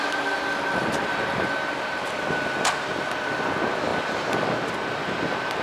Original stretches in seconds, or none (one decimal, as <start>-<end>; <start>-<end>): 0.0-5.6